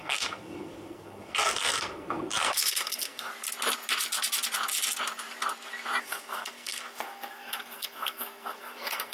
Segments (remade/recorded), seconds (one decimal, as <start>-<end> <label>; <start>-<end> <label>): 0.0-3.3 remade; 3.3-6.0 recorded; 6.0-9.1 remade